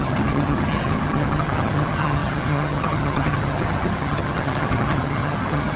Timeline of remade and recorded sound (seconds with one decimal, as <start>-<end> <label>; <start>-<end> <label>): 0.0-5.8 remade